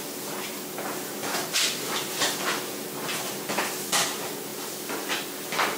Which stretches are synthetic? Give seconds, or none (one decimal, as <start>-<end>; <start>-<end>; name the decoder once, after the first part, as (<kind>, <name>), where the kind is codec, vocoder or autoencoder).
none